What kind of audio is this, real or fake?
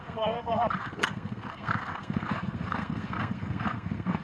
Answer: fake